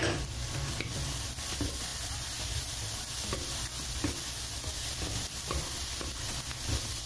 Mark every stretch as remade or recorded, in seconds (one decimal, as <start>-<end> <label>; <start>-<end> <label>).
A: 0.0-7.1 recorded